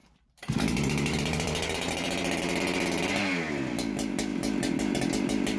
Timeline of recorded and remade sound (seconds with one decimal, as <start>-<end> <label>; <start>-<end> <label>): 0.0-3.0 remade; 3.0-5.6 recorded